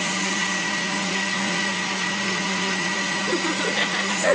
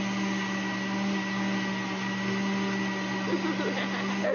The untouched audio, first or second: second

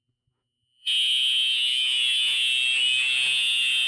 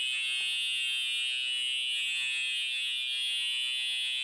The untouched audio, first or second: second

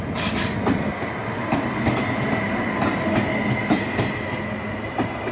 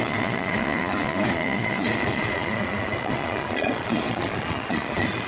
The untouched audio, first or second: first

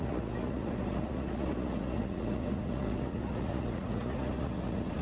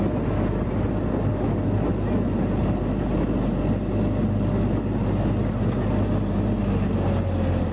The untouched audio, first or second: second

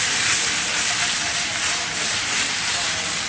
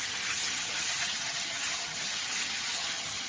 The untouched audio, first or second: first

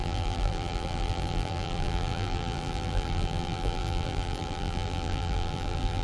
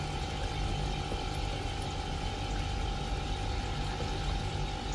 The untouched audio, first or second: second